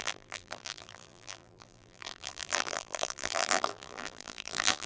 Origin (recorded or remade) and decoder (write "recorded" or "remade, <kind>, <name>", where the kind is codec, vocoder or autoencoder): remade, vocoder, BigVGAN v2